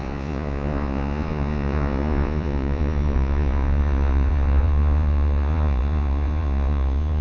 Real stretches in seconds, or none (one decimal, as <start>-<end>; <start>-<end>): none